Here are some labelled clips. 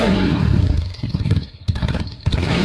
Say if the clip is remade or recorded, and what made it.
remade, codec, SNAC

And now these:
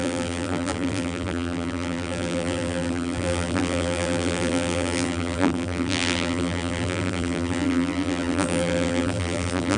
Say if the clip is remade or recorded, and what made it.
remade, vocoder, BigVGAN v2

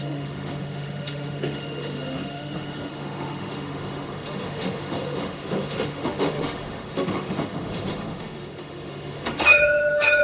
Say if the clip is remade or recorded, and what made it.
remade, autoencoder, DAC-VAE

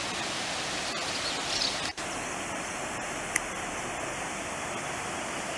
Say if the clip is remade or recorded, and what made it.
recorded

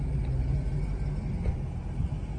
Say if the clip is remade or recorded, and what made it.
recorded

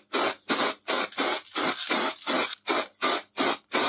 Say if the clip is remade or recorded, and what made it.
recorded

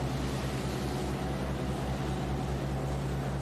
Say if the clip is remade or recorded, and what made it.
recorded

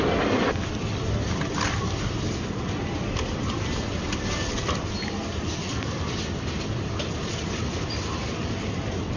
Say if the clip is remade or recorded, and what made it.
remade, vocoder, BigVGAN v2